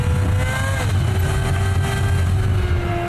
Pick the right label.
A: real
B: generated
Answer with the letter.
A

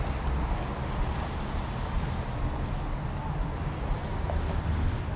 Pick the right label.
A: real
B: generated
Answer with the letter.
A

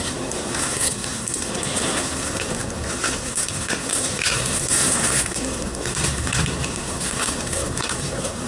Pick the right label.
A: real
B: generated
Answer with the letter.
B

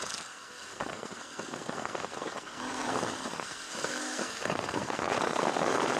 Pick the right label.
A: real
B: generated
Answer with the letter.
B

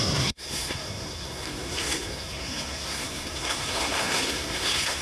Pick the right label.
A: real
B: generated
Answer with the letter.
B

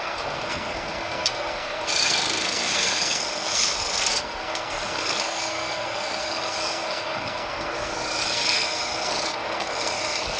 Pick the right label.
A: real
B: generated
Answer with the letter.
B